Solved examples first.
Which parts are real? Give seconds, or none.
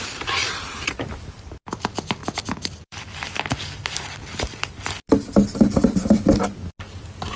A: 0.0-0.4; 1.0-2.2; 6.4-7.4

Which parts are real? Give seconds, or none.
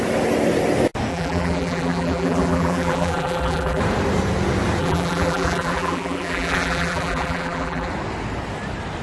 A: 0.0-1.1; 3.8-4.8; 7.9-9.0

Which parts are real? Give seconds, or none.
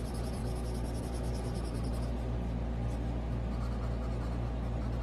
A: 0.4-1.0; 1.9-5.0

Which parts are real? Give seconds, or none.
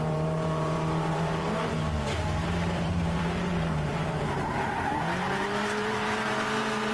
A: 3.9-4.7